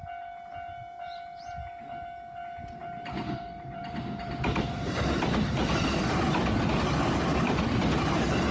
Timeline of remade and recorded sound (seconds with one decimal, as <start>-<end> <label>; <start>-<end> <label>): 0.0-0.8 recorded; 0.8-1.8 remade; 1.8-2.8 recorded; 2.8-6.7 remade; 6.7-7.3 recorded; 7.3-7.9 remade; 7.9-8.5 recorded